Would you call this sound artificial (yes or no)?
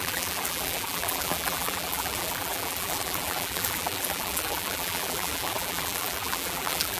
yes